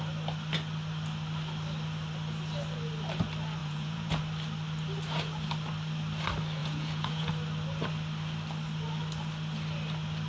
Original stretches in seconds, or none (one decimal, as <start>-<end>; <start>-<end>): 0.0-3.6; 4.2-6.6; 7.3-10.3